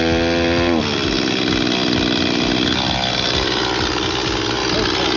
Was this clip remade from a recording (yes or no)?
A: no